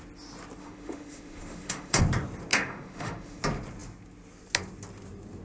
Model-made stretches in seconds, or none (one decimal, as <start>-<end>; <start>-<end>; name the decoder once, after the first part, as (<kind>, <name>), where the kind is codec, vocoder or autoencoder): 0.6-2.0 (autoencoder, DAC-VAE); 2.5-3.4